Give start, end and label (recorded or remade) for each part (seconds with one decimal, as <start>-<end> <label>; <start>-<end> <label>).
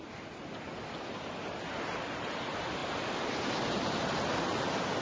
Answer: 0.0-5.0 recorded